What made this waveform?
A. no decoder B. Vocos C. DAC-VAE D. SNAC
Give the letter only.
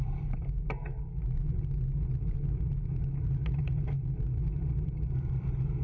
A